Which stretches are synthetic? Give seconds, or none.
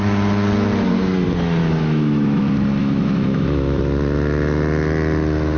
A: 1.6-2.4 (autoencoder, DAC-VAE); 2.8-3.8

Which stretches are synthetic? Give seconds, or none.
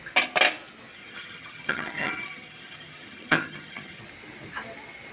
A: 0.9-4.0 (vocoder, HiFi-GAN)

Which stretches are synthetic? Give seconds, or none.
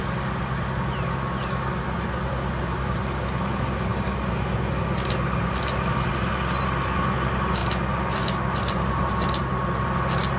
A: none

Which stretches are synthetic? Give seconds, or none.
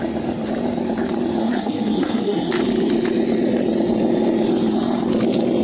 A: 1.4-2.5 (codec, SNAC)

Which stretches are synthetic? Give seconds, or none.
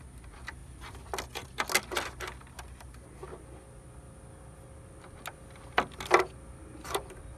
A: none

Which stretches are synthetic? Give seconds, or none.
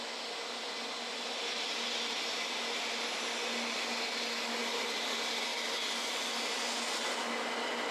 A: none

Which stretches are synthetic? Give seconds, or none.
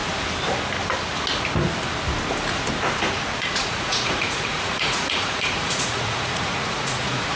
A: 3.4-7.4 (vocoder, Vocos)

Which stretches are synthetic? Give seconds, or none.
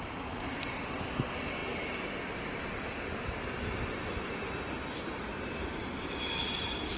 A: none